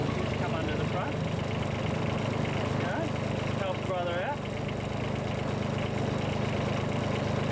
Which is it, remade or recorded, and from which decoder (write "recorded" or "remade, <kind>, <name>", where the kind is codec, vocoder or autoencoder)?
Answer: recorded